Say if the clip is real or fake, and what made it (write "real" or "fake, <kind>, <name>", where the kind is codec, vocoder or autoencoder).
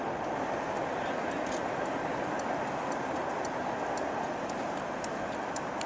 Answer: real